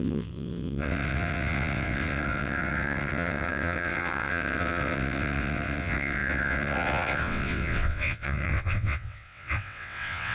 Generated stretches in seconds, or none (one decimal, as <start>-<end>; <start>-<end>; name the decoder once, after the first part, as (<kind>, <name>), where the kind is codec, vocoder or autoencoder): 0.0-10.3 (vocoder, WaveNeXt)